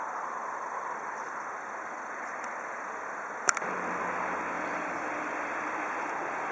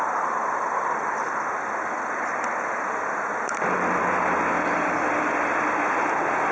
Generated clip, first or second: first